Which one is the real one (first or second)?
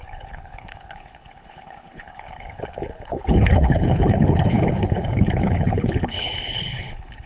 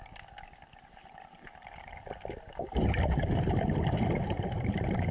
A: second